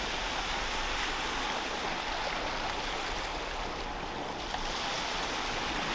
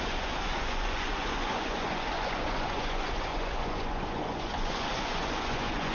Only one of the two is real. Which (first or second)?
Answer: first